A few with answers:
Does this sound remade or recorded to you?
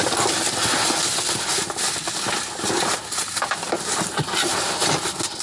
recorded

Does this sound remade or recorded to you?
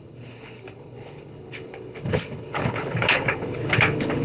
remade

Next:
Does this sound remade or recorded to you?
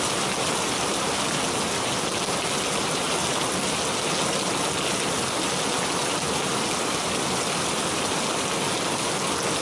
recorded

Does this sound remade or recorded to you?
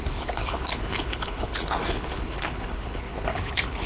remade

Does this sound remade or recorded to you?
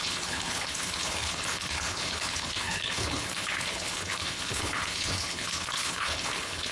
remade